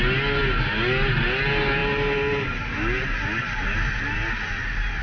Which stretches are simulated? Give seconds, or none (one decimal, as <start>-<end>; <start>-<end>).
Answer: none